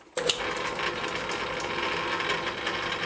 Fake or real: real